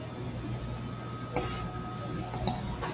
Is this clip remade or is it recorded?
recorded